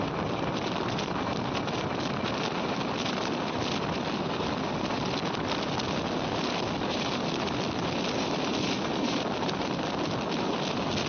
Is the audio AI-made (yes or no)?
no